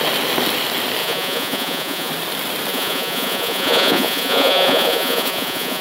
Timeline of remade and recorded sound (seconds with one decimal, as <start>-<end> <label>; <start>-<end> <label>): 0.0-1.0 recorded; 1.0-2.1 remade; 2.1-2.7 recorded; 2.7-5.8 remade